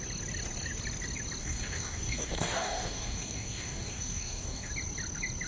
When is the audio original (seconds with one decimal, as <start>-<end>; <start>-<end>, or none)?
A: 0.0-1.4; 4.7-5.5